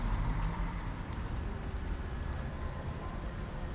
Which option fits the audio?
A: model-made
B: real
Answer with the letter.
A